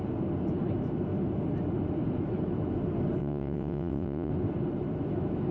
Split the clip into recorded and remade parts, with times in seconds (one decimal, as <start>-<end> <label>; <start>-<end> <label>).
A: 0.0-3.2 recorded; 3.2-4.3 remade; 4.3-5.5 recorded